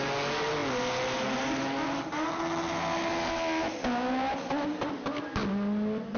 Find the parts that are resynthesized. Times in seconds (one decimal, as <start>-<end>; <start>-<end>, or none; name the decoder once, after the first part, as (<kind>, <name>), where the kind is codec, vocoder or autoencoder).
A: none